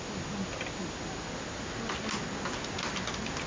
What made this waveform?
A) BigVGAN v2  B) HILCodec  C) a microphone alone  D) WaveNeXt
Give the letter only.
C